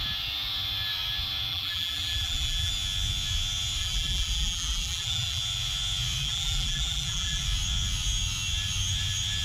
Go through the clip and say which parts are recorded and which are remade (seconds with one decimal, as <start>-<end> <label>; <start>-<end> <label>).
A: 0.0-1.5 recorded; 1.5-2.7 remade; 2.7-3.8 recorded; 3.8-5.4 remade; 5.4-6.2 recorded; 6.2-7.4 remade; 7.4-9.4 recorded